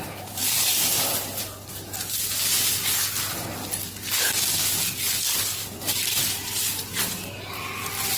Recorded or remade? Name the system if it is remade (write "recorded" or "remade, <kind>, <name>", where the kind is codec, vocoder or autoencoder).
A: recorded